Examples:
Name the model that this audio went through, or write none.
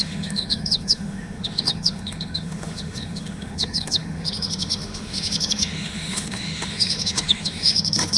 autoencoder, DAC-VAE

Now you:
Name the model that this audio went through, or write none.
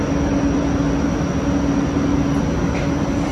none